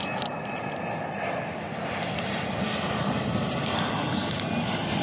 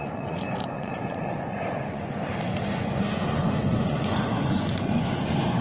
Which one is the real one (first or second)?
first